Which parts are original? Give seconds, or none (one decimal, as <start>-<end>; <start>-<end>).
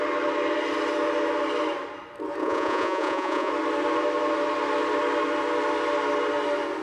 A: 0.0-2.4; 3.5-6.8